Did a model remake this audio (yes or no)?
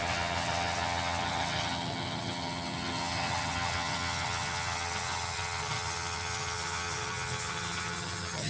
yes